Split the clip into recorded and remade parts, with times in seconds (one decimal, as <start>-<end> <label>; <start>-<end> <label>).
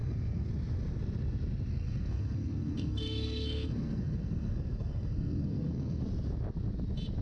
0.0-0.5 remade; 0.5-1.7 recorded; 1.7-6.0 remade; 6.0-7.2 recorded